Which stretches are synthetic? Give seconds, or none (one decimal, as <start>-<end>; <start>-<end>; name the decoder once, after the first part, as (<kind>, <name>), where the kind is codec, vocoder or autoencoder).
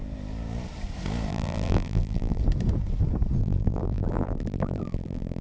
1.3-2.4 (vocoder, BigVGAN v2); 3.4-5.4